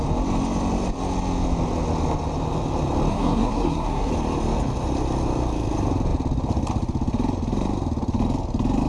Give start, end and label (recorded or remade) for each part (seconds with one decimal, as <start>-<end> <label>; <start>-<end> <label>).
0.0-3.1 recorded; 3.1-4.1 remade; 4.1-8.9 recorded